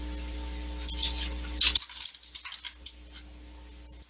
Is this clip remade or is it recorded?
recorded